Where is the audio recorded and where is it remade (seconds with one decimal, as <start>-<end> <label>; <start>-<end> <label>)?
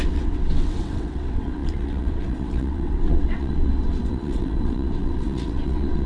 0.0-6.1 remade